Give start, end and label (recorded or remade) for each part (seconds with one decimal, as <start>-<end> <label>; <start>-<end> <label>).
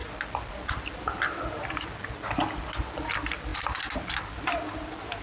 0.0-5.2 recorded